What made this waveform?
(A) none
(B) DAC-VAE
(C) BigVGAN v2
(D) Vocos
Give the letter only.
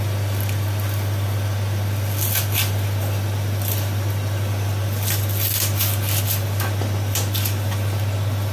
A